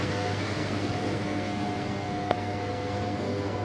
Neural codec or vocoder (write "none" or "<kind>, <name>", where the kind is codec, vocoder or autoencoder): codec, SNAC